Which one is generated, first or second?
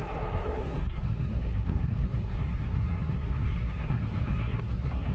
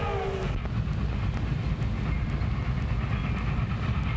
first